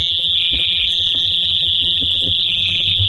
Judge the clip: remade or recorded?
remade